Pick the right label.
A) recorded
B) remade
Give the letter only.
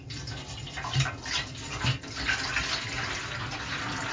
A